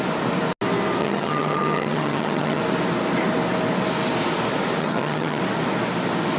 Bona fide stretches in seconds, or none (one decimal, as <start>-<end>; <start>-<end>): 0.0-1.0; 2.6-4.8; 5.4-6.4

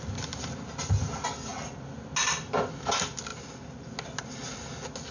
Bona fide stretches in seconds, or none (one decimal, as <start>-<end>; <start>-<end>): 0.0-5.1

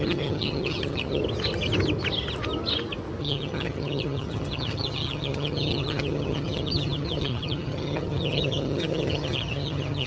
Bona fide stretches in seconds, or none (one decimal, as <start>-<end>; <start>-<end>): 1.2-3.2

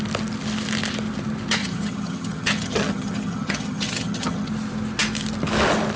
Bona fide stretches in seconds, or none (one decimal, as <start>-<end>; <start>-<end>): 0.0-1.6; 4.5-6.0

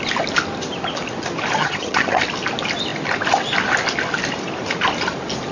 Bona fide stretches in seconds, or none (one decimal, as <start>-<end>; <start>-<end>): 0.0-1.6; 2.2-5.5

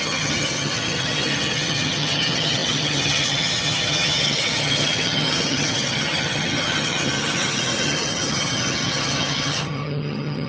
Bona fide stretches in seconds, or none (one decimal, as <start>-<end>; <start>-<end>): none

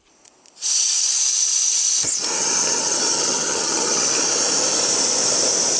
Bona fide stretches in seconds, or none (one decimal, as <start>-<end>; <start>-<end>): 0.0-2.4; 4.2-5.8